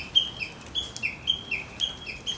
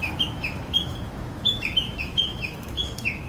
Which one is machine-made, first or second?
second